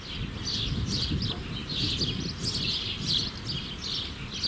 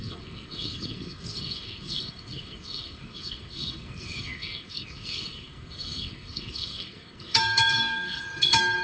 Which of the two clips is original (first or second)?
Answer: first